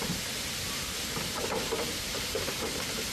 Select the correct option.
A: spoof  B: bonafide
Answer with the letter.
A